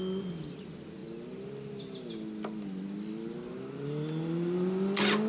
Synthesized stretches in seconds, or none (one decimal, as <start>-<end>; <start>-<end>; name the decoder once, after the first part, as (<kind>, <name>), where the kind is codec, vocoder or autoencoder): none

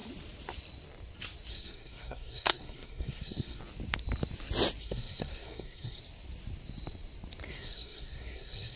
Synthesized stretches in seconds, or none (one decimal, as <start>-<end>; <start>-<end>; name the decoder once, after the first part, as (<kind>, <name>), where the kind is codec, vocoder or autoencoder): 1.5-3.6 (codec, SNAC); 4.8-6.0; 7.5-8.8

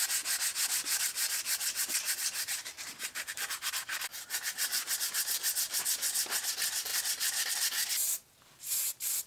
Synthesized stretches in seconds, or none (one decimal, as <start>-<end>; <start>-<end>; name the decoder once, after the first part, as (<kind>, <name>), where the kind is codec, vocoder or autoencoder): none

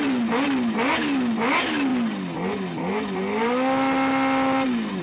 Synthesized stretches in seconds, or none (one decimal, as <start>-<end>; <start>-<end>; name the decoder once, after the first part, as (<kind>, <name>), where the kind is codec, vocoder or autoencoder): none

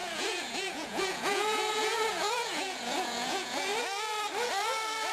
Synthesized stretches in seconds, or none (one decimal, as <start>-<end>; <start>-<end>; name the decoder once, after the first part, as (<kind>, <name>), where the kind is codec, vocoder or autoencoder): 0.0-3.7 (vocoder, Vocos)

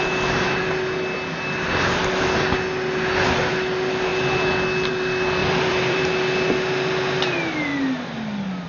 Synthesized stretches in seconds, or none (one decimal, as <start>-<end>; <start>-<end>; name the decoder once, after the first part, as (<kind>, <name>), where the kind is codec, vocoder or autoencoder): 5.4-6.0 (vocoder, BigVGAN v2)

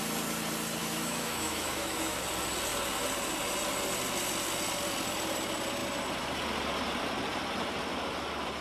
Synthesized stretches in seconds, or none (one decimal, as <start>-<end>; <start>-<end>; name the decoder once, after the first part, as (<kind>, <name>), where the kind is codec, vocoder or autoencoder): 0.8-2.2 (autoencoder, DAC-VAE)